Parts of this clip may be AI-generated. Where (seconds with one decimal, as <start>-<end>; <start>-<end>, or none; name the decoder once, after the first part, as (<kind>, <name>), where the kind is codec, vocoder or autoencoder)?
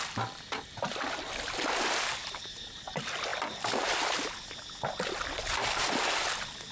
none